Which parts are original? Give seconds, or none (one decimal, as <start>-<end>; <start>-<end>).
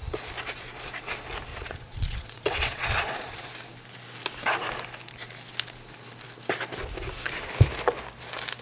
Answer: 0.0-1.5; 3.5-8.6